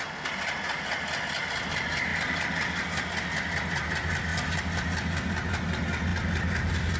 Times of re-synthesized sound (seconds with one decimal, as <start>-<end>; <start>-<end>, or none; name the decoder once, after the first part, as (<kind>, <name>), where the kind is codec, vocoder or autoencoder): none